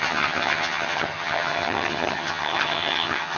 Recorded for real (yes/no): no